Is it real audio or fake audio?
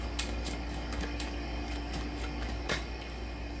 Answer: fake